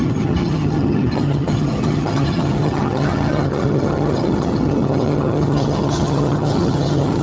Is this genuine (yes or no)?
no